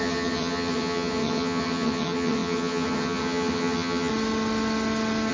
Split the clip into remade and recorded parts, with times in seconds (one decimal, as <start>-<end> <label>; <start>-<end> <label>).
0.0-4.1 remade; 4.1-5.3 recorded

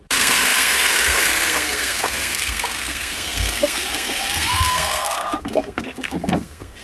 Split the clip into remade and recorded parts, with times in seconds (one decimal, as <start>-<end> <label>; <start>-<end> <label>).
0.0-6.8 remade

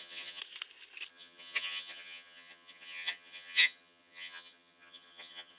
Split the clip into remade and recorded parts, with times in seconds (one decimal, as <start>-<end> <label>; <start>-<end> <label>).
0.0-0.4 remade; 0.4-1.1 recorded; 1.1-5.6 remade

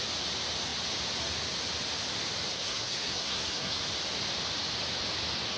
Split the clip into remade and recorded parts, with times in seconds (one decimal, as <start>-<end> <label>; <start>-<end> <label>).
0.0-2.5 recorded; 2.5-3.8 remade; 3.8-5.6 recorded

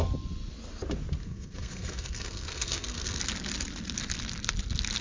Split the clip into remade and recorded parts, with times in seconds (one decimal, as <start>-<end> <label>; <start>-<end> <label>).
0.0-1.2 recorded; 1.2-3.2 remade; 3.2-5.0 recorded

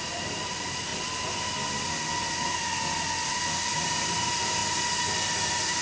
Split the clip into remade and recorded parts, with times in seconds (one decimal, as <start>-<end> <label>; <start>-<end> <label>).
0.0-0.9 remade; 0.9-3.7 recorded; 3.7-4.6 remade; 4.6-5.3 recorded; 5.3-5.8 remade

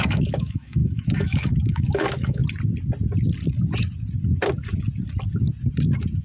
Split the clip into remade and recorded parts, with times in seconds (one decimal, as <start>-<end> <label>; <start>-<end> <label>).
0.0-2.4 remade; 2.4-6.2 recorded

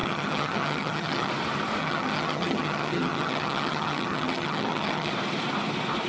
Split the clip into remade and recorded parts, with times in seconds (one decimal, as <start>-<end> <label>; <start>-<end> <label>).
0.0-1.3 remade; 1.3-1.8 recorded; 1.8-5.1 remade; 5.1-6.1 recorded